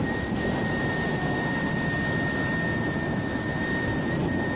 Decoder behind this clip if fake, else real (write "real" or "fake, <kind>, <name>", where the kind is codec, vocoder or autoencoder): real